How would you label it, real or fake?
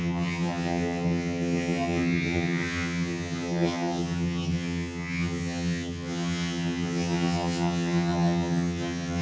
fake